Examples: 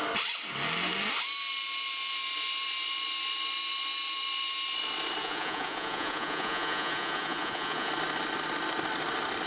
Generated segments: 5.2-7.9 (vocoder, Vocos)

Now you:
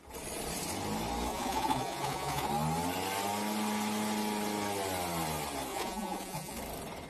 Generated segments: 1.3-2.5 (vocoder, Vocos); 5.7-6.6